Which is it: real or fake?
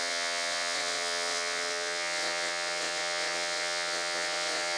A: fake